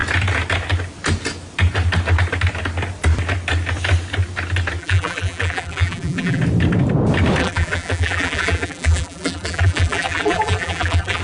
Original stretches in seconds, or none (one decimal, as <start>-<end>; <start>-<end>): 0.0-4.8; 6.4-7.4